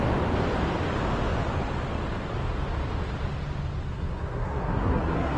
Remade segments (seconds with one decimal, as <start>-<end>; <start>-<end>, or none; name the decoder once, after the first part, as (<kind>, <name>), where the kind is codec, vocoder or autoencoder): 3.9-5.4 (codec, SNAC)